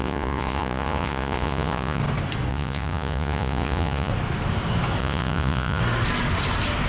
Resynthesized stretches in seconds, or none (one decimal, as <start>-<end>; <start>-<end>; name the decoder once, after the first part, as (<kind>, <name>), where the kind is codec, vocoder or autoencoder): 0.0-2.0 (vocoder, Vocos); 2.5-4.1; 5.0-5.8